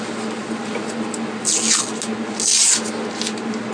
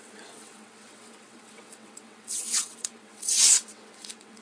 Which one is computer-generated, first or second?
second